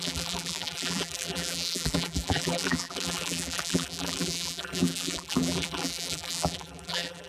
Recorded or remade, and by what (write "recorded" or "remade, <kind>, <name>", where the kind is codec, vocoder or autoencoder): remade, vocoder, BigVGAN v2